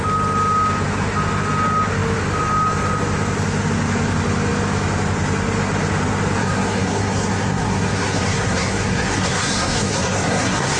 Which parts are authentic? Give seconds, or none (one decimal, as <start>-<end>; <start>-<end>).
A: 0.0-6.4